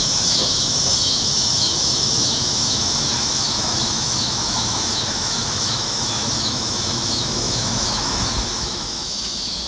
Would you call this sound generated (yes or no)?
yes